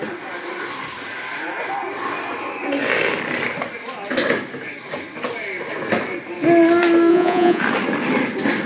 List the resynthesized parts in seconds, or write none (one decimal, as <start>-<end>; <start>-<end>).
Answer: 7.1-7.6

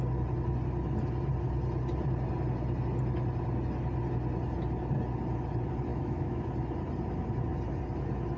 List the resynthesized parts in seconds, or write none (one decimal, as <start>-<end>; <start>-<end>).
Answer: 5.9-6.4

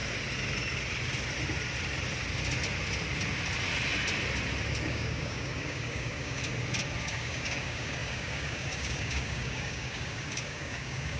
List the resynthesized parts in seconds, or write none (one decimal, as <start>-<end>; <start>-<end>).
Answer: 4.8-6.4; 7.0-11.2

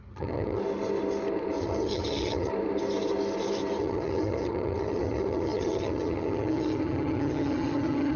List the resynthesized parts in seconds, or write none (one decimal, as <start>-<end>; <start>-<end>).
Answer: 0.0-0.6; 1.6-2.5; 3.8-8.2

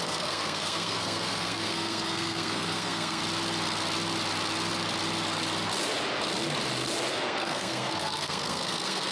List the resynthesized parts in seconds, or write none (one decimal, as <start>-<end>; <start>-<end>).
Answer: 0.0-3.2; 7.1-9.1